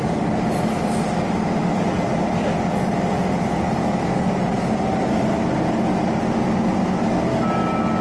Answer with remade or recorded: recorded